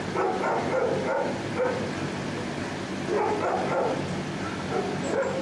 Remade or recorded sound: recorded